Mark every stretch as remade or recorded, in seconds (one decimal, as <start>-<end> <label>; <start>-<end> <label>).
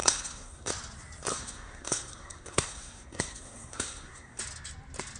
0.0-0.7 remade; 0.7-1.3 recorded; 1.3-4.4 remade; 4.4-5.2 recorded